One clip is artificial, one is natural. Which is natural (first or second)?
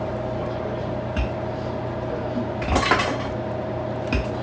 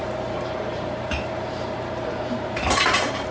first